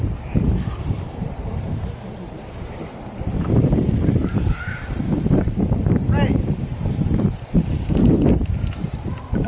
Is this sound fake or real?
fake